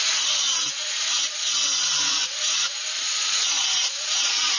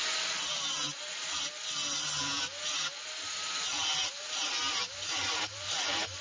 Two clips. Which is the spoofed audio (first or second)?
first